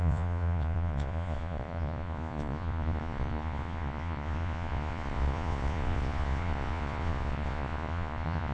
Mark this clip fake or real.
fake